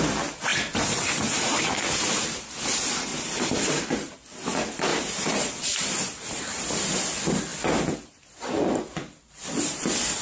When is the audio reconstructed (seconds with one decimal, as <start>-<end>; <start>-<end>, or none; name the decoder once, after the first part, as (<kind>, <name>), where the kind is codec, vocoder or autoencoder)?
0.5-1.6 (vocoder, BigVGAN v2); 3.1-3.8; 4.9-6.6